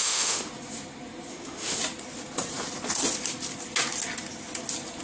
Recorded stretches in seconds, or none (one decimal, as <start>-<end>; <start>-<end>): 0.5-1.3; 1.8-5.0